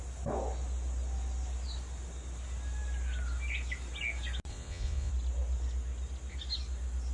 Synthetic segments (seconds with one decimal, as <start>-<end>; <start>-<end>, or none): 4.5-5.1